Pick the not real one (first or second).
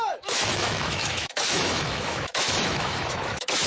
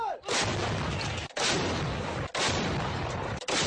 first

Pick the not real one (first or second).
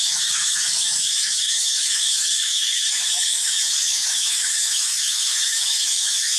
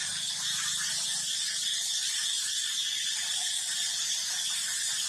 first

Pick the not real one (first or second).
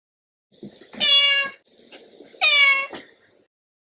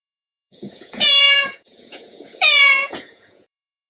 second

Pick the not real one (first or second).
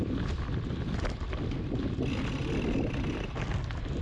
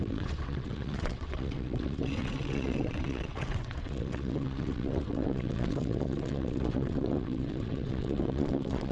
second